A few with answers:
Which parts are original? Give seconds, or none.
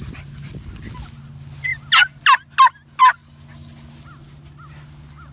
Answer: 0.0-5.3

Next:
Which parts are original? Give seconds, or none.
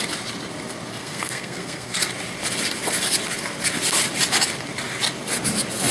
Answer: 0.0-0.9; 2.0-5.9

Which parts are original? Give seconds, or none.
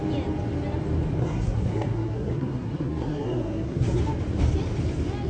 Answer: 0.0-1.2; 4.0-5.3